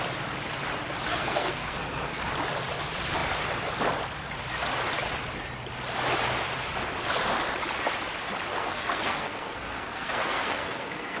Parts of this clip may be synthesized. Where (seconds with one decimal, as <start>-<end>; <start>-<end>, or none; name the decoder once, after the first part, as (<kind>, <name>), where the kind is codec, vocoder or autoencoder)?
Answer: 1.1-2.2 (codec, SNAC); 8.5-11.2